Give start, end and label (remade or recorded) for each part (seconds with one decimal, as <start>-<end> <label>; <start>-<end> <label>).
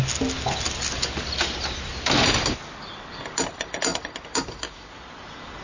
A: 0.0-5.6 recorded